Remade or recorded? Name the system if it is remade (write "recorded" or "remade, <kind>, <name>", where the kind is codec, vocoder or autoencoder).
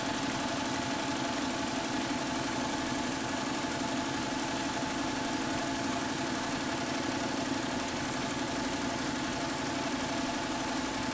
recorded